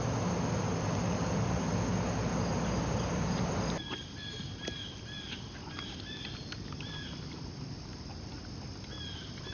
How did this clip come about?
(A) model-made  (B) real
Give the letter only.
B